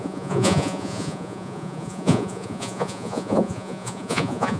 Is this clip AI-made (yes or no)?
yes